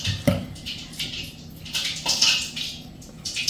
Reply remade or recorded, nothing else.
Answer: recorded